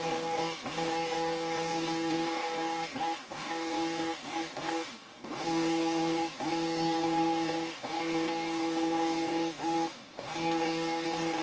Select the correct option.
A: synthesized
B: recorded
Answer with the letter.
A